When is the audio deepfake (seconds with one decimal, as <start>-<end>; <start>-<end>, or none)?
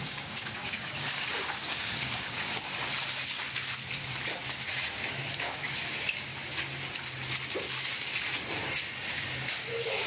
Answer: 0.0-2.7; 4.7-6.3; 9.1-10.1